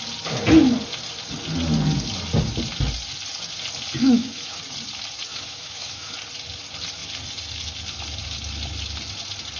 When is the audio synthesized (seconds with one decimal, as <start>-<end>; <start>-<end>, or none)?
4.0-4.6; 5.3-6.1